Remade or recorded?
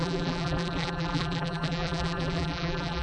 remade